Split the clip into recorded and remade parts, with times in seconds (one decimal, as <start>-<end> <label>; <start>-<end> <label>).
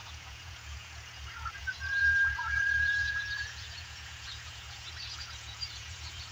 0.0-6.3 remade